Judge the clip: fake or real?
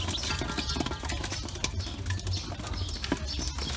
real